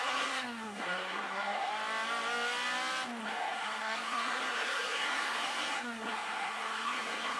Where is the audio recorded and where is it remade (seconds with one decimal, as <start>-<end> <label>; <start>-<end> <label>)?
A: 0.0-1.7 remade; 1.7-3.2 recorded; 3.2-7.4 remade